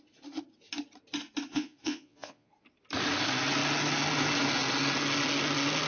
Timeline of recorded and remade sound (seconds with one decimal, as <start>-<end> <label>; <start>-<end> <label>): 0.0-1.5 recorded; 1.5-2.5 remade; 2.5-5.9 recorded